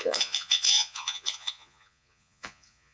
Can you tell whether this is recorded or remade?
remade